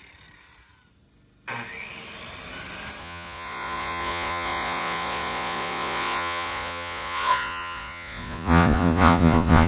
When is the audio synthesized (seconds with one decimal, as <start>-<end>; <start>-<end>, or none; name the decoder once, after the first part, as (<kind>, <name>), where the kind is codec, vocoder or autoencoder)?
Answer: 3.0-9.7 (vocoder, Vocos)